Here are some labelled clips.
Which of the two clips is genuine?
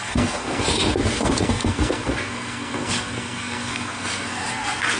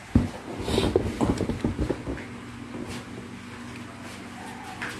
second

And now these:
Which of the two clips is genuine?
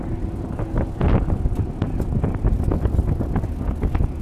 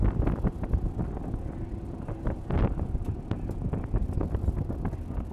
first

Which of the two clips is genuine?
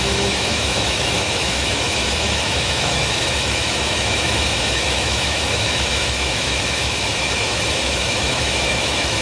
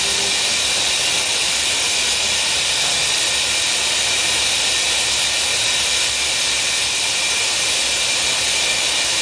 second